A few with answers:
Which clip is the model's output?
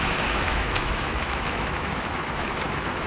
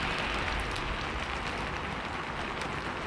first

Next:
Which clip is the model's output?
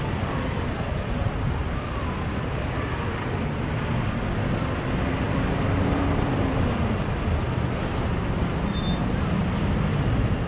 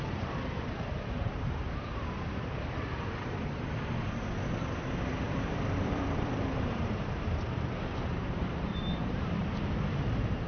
second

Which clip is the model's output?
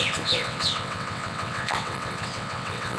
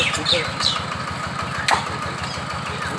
first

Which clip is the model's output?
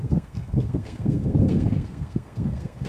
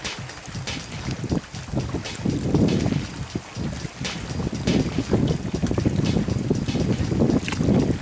first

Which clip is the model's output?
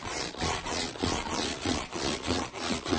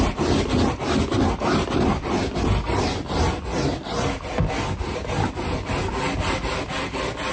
first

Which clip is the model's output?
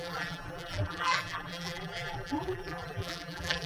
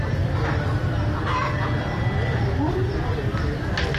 first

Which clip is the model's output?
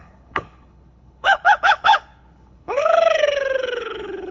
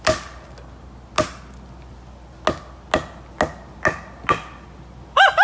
first